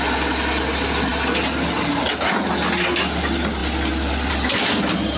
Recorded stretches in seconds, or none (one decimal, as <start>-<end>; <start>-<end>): 0.0-5.2